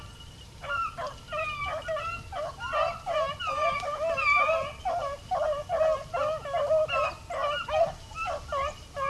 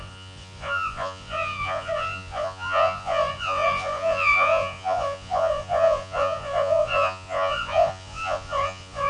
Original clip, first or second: first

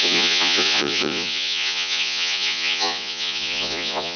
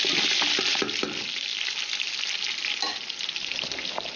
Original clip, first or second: second